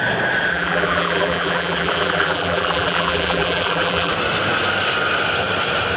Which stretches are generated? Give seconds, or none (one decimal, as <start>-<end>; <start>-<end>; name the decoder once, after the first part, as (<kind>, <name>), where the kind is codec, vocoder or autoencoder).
0.5-4.1 (vocoder, BigVGAN v2)